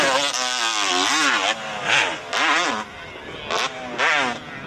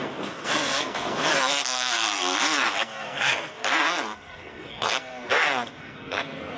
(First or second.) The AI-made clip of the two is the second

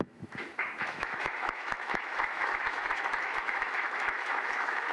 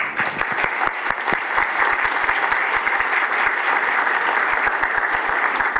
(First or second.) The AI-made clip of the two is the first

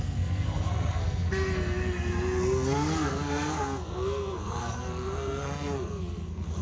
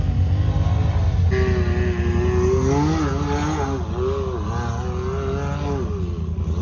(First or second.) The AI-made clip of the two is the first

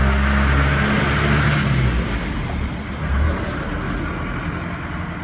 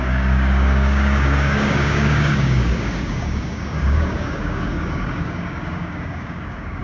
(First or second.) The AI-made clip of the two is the second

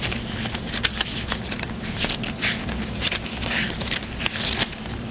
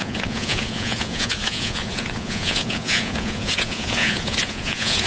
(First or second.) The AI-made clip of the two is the second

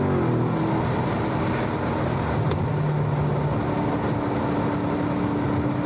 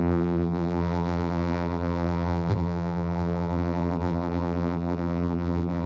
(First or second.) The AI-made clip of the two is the second